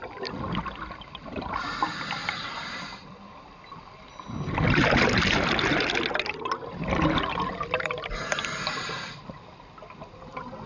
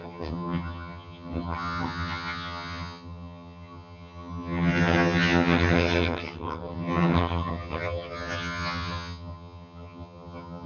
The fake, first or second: second